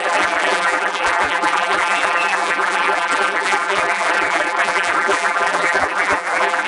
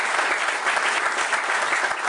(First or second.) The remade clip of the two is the first